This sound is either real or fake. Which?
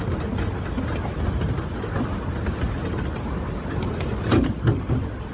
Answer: real